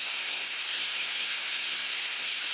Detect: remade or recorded remade